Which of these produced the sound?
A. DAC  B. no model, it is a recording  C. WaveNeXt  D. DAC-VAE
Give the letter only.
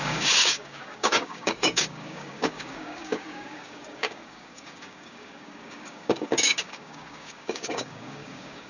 A